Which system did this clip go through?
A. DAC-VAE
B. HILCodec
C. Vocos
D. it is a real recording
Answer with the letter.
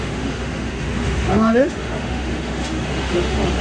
A